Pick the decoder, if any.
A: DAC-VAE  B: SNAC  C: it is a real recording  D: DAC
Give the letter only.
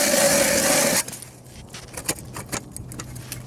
C